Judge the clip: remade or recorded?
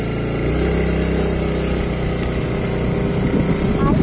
recorded